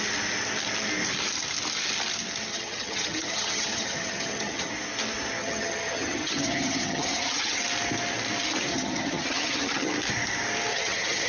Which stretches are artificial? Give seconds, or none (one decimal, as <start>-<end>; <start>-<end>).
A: 2.5-4.7; 5.4-7.6; 8.7-9.9; 10.7-11.3